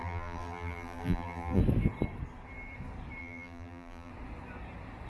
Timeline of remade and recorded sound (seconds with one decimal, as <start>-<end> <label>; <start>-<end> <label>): 0.0-1.6 remade; 1.6-3.2 recorded; 3.2-4.1 remade; 4.1-5.1 recorded